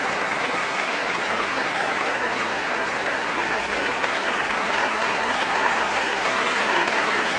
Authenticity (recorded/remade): remade